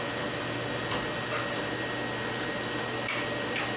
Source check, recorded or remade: recorded